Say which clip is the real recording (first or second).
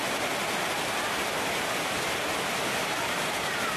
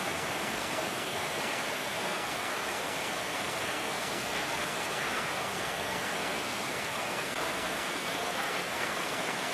first